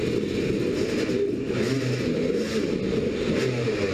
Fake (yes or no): no